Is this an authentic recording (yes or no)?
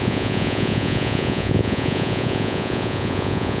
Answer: no